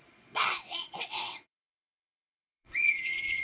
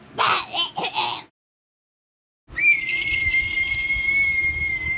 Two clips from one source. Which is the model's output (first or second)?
first